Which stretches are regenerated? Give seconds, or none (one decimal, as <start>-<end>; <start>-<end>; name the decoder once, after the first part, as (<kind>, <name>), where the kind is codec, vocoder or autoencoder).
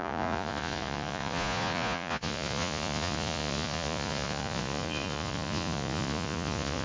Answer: 0.0-6.8 (vocoder, Vocos)